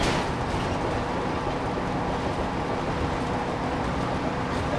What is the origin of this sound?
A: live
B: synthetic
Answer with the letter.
A